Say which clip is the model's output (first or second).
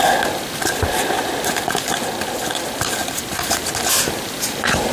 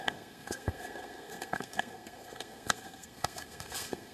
second